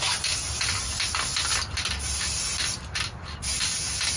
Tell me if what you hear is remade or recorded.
recorded